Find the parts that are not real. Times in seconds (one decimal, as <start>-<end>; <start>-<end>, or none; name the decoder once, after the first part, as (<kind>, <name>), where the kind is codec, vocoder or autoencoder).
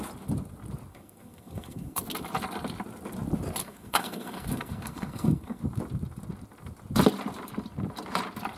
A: 0.9-2.0 (codec, SNAC); 3.6-5.6